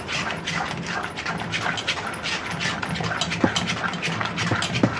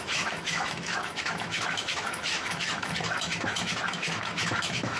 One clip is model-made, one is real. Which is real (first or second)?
first